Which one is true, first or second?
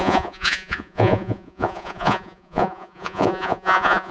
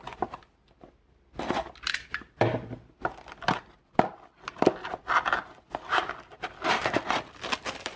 second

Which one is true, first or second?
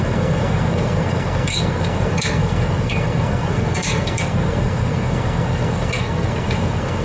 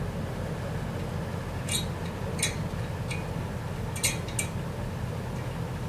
second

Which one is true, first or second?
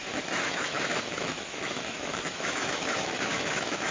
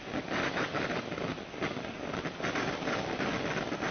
second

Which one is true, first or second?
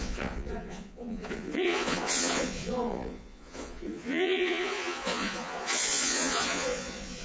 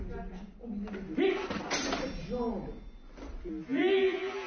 second